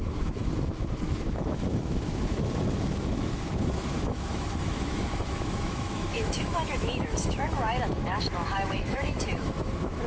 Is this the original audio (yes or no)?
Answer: no